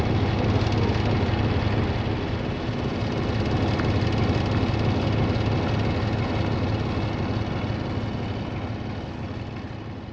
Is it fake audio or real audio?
real